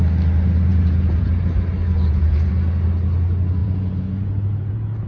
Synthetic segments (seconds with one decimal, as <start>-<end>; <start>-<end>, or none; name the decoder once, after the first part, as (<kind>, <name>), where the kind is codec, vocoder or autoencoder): 0.7-1.3 (vocoder, Vocos); 1.8-2.5; 3.6-5.1